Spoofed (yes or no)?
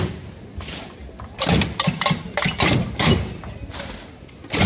no